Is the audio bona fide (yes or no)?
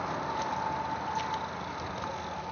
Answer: yes